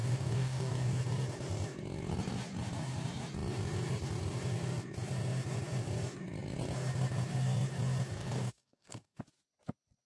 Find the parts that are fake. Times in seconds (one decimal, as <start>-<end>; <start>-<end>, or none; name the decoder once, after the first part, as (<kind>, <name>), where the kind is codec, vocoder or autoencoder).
0.0-1.0 (codec, DAC); 8.2-9.2